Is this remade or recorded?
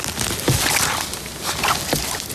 recorded